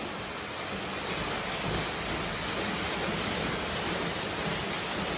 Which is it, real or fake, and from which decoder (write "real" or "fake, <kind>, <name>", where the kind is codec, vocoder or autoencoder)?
real